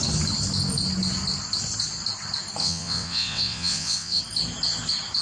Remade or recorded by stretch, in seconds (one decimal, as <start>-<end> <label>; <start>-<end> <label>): 0.0-2.6 recorded; 2.6-4.2 remade; 4.2-5.2 recorded